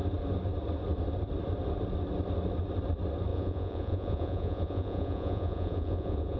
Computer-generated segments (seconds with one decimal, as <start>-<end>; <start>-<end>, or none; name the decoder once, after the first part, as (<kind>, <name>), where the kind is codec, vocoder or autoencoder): 3.3-6.4 (vocoder, Vocos)